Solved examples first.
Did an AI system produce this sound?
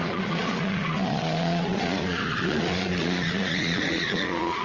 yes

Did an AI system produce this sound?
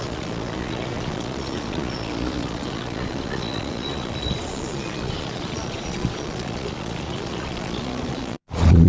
yes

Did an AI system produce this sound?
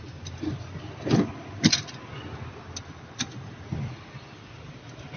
no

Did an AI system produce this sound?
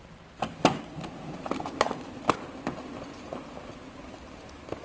no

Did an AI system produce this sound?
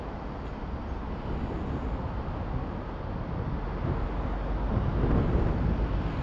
no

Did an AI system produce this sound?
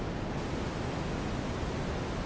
no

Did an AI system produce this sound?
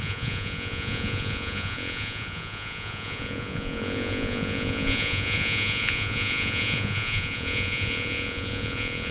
yes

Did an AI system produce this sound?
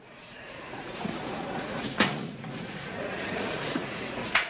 yes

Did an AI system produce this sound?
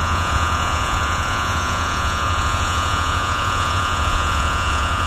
yes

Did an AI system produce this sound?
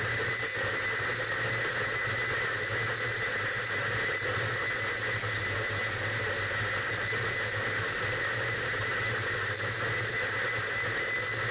no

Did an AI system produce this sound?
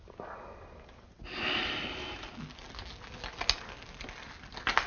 no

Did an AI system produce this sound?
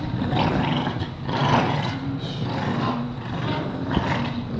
no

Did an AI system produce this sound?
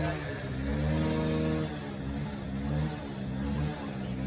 no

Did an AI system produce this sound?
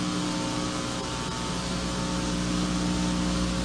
no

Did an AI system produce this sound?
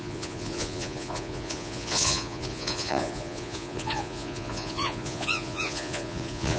yes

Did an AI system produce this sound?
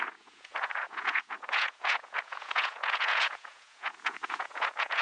yes